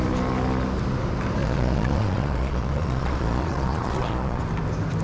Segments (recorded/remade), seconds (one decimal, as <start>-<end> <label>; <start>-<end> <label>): 0.0-1.4 recorded; 1.4-4.4 remade; 4.4-5.0 recorded